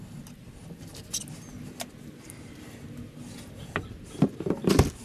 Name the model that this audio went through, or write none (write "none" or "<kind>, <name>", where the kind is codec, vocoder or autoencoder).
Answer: none